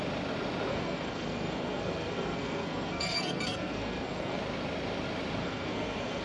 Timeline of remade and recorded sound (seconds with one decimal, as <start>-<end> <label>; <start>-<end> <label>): 0.0-0.7 recorded; 0.7-4.4 remade; 4.4-5.4 recorded; 5.4-6.2 remade